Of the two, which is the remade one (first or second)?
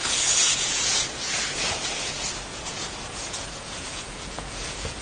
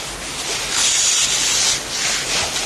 first